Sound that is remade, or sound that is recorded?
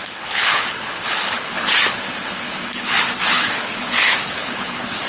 remade